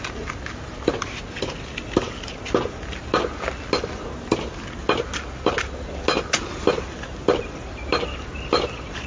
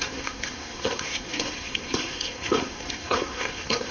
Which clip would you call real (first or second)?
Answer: first